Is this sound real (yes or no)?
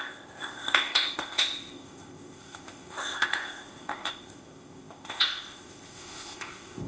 no